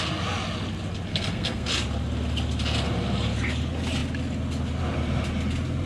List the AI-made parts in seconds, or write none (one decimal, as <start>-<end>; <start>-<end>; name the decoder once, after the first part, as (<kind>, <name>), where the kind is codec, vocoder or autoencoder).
1.1-1.7 (codec, SNAC)